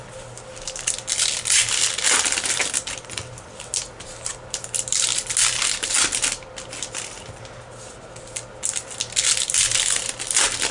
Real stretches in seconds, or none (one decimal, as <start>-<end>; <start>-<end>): 0.0-10.7